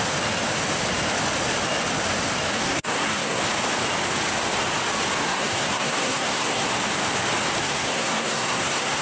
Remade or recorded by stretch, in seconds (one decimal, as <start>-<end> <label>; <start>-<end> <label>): 0.0-2.6 recorded; 2.6-3.4 remade; 3.4-5.2 recorded; 5.2-6.7 remade; 6.7-7.6 recorded; 7.6-9.0 remade